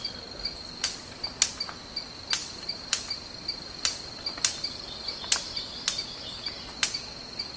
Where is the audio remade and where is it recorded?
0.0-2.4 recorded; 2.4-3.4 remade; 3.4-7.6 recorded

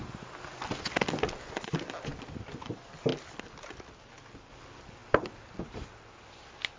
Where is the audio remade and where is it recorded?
0.0-6.8 recorded

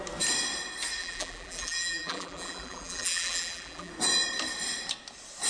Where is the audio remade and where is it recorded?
0.0-1.0 recorded; 1.0-3.9 remade; 3.9-5.5 recorded

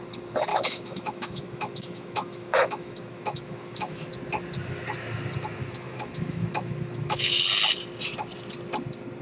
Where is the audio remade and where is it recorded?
0.0-0.5 recorded; 0.5-4.1 remade; 4.1-5.6 recorded; 5.6-7.4 remade; 7.4-9.2 recorded

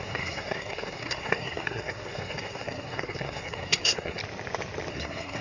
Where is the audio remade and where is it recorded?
0.0-4.2 remade; 4.2-4.9 recorded; 4.9-5.4 remade

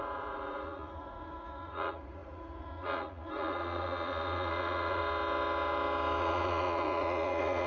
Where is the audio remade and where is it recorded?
0.0-5.0 remade; 5.0-6.2 recorded; 6.2-7.7 remade

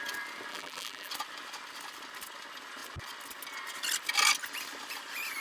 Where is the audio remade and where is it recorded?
0.0-0.5 recorded; 0.5-1.1 remade; 1.1-5.4 recorded